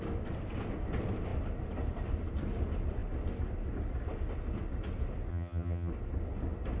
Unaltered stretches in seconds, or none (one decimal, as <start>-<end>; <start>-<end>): 0.0-5.3; 5.9-6.8